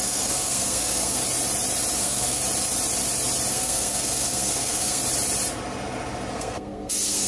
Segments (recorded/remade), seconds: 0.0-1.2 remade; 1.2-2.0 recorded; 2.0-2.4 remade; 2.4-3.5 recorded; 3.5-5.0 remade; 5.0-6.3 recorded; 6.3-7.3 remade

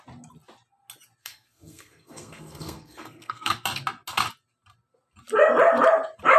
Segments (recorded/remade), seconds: 0.0-1.2 recorded; 1.2-3.5 remade; 3.5-6.4 recorded

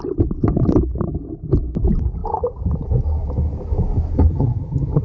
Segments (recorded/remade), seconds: 0.0-4.3 recorded; 4.3-5.0 remade

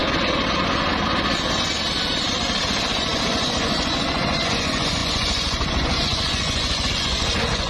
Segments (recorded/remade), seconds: 0.0-2.9 recorded; 2.9-7.7 remade

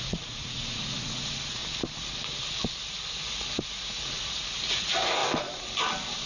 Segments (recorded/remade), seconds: 0.0-1.6 remade; 1.6-3.3 recorded; 3.3-5.2 remade; 5.2-6.3 recorded

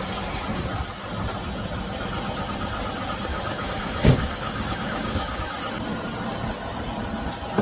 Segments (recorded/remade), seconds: 0.0-3.3 recorded; 3.3-5.4 remade; 5.4-7.6 recorded

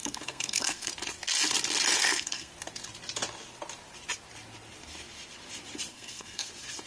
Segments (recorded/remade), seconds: 0.0-0.9 remade; 0.9-2.0 recorded; 2.0-2.5 remade; 2.5-5.9 recorded; 5.9-6.5 remade; 6.5-6.9 recorded